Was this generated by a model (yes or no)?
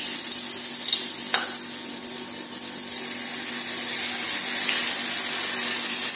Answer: no